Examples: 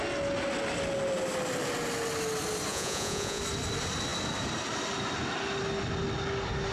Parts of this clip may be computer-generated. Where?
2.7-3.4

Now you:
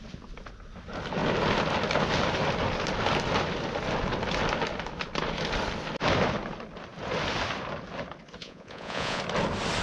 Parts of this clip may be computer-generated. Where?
8.4-9.2

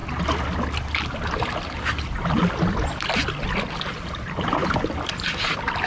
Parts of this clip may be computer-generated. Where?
none

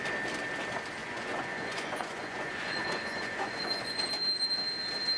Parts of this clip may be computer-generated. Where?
1.0-4.1

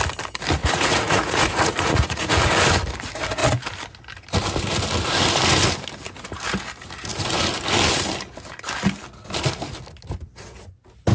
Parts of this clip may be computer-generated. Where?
0.6-2.5